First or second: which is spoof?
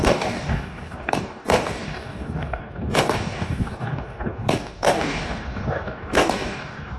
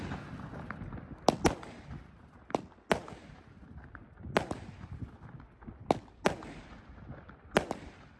first